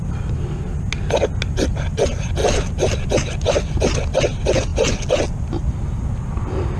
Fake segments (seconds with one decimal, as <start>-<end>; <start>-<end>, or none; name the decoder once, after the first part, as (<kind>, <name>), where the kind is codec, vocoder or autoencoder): 2.4-3.0 (vocoder, BigVGAN v2)